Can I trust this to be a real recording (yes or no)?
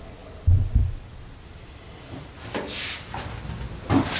yes